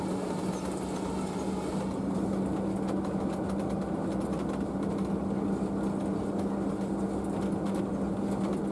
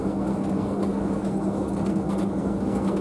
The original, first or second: first